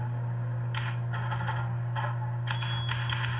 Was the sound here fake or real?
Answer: real